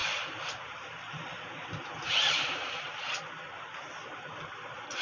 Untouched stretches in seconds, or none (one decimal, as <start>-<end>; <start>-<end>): 3.0-3.8